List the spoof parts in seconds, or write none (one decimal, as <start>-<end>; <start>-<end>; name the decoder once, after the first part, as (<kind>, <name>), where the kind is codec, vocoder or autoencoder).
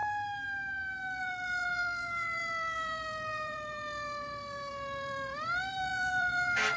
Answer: 1.2-6.8 (vocoder, BigVGAN v2)